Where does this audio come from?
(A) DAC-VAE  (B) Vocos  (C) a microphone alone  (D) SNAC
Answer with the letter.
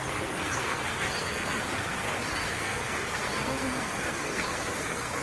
D